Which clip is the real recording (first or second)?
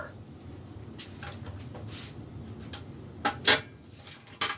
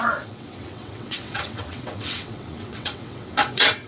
first